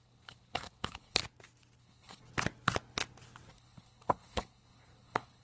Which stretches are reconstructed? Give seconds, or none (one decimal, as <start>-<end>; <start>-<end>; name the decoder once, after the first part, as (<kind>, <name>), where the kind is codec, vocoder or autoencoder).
0.0-1.2 (codec, HILCodec); 1.8-2.2; 3.5-5.4